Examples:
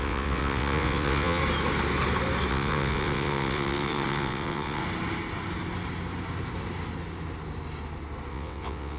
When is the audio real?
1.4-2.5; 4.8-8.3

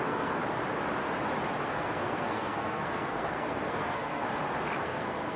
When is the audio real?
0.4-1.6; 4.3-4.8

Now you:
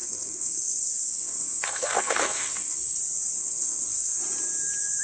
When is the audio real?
3.0-3.4; 4.2-5.0

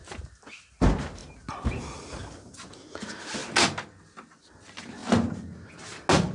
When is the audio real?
0.0-6.3

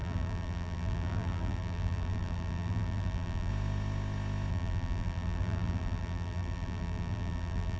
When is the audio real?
3.5-4.5